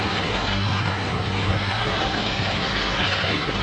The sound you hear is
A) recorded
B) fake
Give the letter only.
B